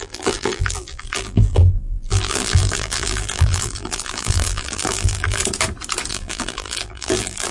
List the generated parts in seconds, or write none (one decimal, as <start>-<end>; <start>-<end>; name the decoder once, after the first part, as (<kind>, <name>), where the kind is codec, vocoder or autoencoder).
0.0-5.4 (vocoder, BigVGAN v2); 6.1-7.5